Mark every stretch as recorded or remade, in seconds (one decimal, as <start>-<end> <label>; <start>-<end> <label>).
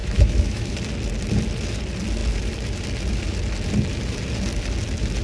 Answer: 0.0-0.7 remade; 0.7-5.2 recorded